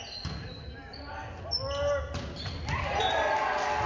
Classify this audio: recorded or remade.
recorded